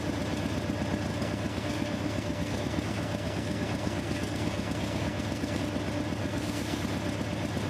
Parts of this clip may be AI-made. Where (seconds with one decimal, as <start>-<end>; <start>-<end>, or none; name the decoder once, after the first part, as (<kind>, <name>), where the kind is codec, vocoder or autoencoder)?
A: 1.1-5.6 (codec, SNAC); 6.2-6.8